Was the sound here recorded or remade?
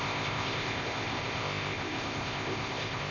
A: remade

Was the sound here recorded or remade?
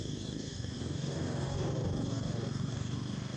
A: remade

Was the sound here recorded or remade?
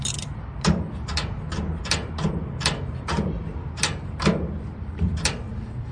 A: remade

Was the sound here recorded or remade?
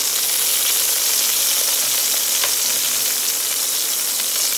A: recorded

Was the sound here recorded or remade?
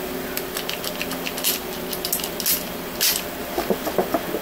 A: recorded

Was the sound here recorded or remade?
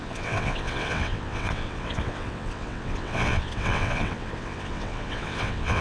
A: remade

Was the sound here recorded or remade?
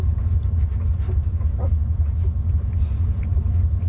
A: recorded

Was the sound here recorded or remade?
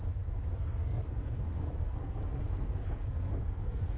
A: remade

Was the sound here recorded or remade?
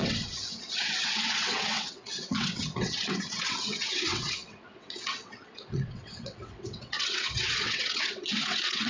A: remade